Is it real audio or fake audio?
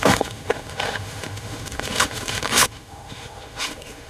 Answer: fake